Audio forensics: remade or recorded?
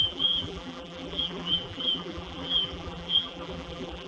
remade